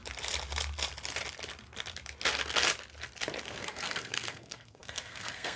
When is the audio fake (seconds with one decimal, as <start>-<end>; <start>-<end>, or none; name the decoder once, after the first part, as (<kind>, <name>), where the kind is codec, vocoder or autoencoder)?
3.4-5.6 (codec, SNAC)